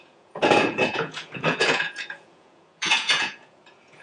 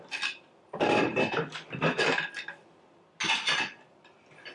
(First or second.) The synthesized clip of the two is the first